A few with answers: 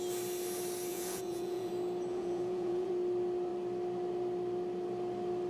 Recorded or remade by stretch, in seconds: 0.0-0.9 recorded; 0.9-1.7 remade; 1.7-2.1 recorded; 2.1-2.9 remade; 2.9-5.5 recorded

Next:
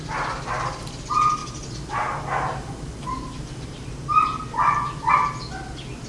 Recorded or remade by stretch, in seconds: 0.0-6.1 recorded

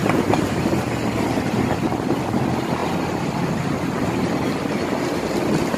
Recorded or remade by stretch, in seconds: 0.0-0.6 remade; 0.6-5.8 recorded

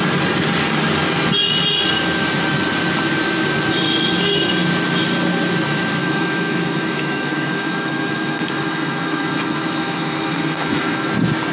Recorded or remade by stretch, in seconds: 0.0-6.0 recorded; 6.0-11.1 remade; 11.1-11.5 recorded